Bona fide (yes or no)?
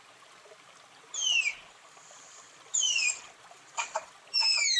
yes